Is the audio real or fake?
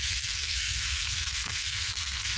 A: fake